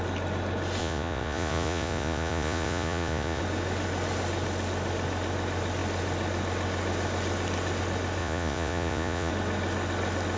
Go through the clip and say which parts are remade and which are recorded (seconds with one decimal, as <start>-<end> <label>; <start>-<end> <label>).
0.0-0.8 recorded; 0.8-3.4 remade; 3.4-8.2 recorded; 8.2-9.3 remade; 9.3-10.4 recorded